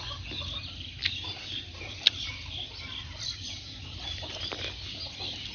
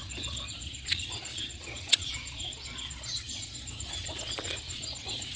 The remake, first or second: second